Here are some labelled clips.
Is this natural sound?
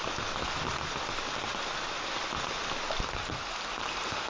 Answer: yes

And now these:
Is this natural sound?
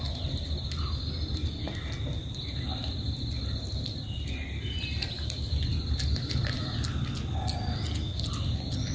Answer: yes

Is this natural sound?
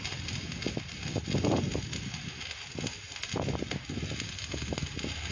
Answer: yes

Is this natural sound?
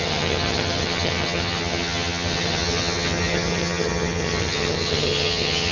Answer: no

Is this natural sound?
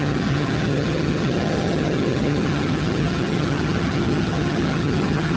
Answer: no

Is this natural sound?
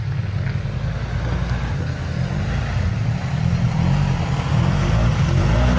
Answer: yes